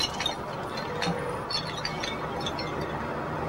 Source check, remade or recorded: recorded